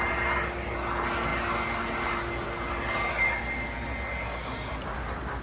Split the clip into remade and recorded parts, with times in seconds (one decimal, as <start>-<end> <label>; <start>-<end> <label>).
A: 0.0-5.4 recorded